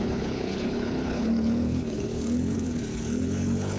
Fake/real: fake